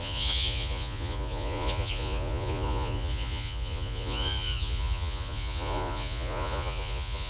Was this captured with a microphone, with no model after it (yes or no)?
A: no